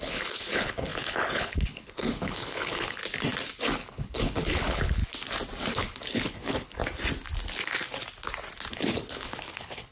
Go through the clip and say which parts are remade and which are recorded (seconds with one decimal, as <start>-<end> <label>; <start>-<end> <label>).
0.0-3.0 remade; 3.0-3.9 recorded; 3.9-5.0 remade; 5.0-5.7 recorded; 5.7-6.8 remade; 6.8-8.7 recorded; 8.7-9.9 remade